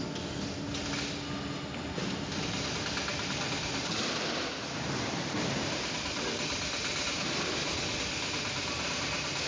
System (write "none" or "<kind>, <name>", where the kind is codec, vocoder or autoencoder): none